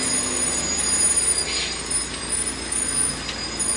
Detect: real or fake real